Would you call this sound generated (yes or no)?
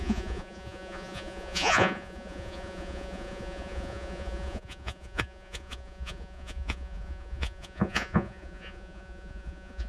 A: yes